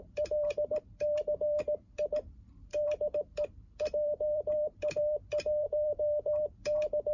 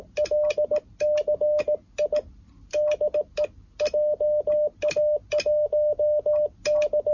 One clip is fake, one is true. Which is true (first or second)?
second